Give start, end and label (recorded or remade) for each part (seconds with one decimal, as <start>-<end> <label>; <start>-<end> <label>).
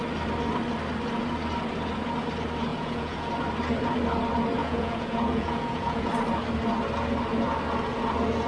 0.0-2.7 recorded; 2.7-3.3 remade; 3.3-4.6 recorded; 4.6-6.1 remade; 6.1-8.5 recorded